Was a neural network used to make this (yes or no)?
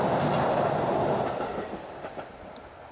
no